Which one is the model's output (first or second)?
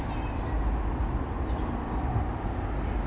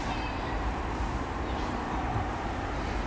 second